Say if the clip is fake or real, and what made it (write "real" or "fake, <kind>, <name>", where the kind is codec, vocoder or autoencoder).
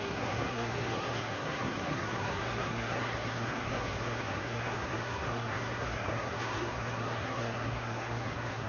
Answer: fake, codec, SNAC